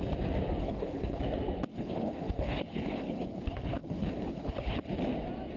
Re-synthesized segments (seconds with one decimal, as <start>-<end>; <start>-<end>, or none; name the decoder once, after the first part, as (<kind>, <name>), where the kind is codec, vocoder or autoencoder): 0.6-1.2 (codec, HILCodec); 1.7-4.8